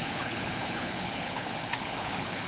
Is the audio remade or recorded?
remade